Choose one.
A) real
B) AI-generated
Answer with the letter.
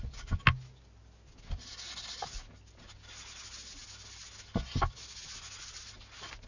A